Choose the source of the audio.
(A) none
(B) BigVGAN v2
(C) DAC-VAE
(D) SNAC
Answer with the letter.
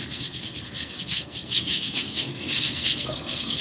D